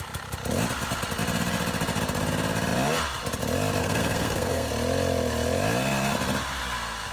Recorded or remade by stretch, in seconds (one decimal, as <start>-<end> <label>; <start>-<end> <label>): 0.0-3.8 recorded; 3.8-4.7 remade; 4.7-7.1 recorded